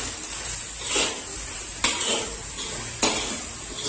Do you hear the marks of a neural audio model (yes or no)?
no